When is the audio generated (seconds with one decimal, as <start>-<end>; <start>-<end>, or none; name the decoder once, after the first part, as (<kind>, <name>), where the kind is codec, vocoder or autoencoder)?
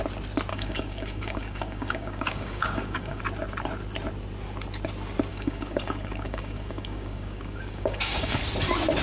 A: 0.5-3.2 (codec, DAC); 5.3-8.4